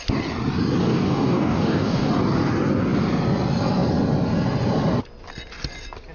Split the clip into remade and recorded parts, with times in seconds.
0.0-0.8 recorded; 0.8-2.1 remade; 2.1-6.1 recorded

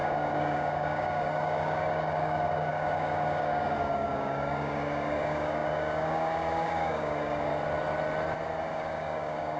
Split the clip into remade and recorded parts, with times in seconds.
0.0-7.5 remade; 7.5-8.7 recorded; 8.7-9.6 remade

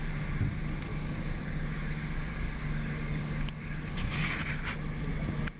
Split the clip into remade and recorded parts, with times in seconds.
0.0-0.9 recorded; 0.9-4.3 remade; 4.3-5.6 recorded

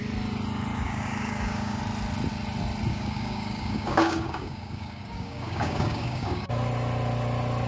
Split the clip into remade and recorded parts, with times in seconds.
0.0-0.7 recorded; 0.7-1.8 remade; 1.8-2.9 recorded; 2.9-6.5 remade; 6.5-7.7 recorded